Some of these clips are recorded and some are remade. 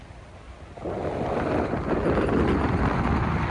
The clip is recorded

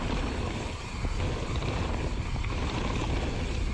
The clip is recorded